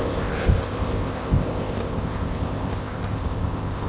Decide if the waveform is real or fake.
fake